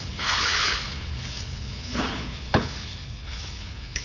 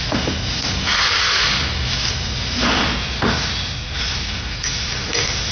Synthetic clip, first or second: first